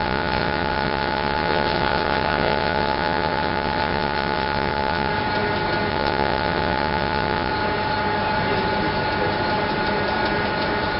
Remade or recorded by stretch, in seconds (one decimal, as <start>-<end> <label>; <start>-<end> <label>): 0.0-5.1 remade; 5.1-5.9 recorded; 5.9-7.5 remade; 7.5-11.0 recorded